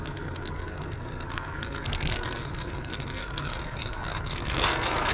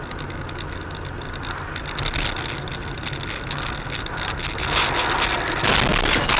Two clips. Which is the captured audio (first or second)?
second